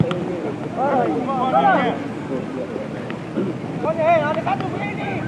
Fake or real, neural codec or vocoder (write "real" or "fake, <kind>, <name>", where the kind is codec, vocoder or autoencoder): real